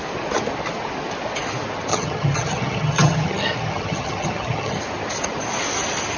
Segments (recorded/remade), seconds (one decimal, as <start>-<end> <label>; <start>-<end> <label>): 0.0-1.9 recorded; 1.9-4.8 remade; 4.8-6.2 recorded